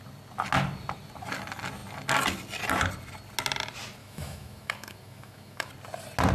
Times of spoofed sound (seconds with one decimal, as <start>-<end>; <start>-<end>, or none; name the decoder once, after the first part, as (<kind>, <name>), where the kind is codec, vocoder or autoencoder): 4.0-5.7 (autoencoder, DAC-VAE)